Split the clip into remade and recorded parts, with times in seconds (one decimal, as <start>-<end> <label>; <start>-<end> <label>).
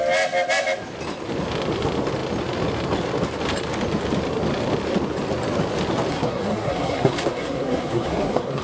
0.0-6.1 recorded; 6.1-8.6 remade